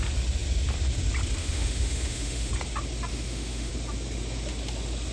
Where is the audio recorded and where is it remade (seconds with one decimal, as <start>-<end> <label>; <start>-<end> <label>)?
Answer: 0.0-1.4 recorded; 1.4-2.5 remade; 2.5-3.1 recorded; 3.1-3.7 remade; 3.7-5.1 recorded